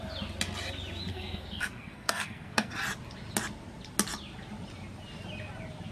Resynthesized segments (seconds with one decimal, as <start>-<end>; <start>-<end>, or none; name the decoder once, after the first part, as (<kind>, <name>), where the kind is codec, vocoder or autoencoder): 1.1-2.7 (codec, SNAC)